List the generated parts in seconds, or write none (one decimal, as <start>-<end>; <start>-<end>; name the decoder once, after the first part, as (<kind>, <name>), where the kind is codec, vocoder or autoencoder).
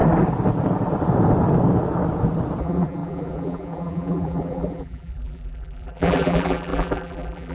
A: 2.6-7.5 (vocoder, BigVGAN v2)